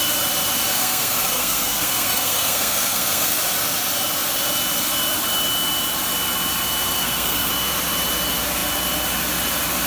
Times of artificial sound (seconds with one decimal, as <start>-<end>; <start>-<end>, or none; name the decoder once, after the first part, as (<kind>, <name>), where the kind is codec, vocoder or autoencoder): 0.7-3.4 (codec, SNAC); 7.0-7.5